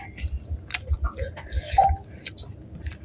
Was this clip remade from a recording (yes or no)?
no